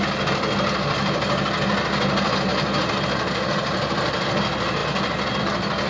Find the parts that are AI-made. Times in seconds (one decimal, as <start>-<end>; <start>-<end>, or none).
none